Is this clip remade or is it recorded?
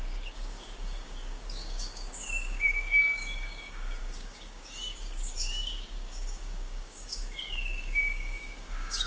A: remade